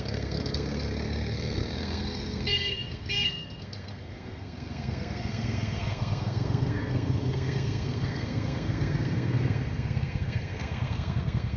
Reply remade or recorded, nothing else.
remade